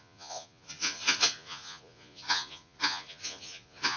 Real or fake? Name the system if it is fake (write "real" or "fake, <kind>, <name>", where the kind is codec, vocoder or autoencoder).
fake, vocoder, Vocos